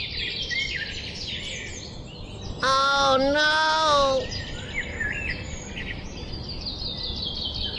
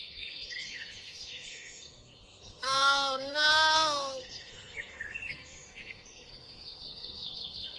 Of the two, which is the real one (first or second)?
first